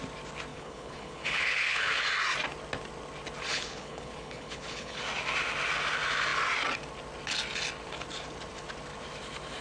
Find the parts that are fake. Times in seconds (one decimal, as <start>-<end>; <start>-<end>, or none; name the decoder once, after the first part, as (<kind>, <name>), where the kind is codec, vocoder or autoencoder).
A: 0.5-2.0 (codec, HILCodec); 3.5-5.0